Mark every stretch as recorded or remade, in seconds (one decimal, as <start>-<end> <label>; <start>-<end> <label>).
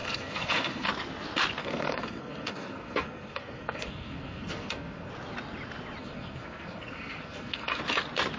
0.0-0.9 remade; 0.9-1.6 recorded; 1.6-5.1 remade; 5.1-6.0 recorded; 6.0-7.8 remade; 7.8-8.4 recorded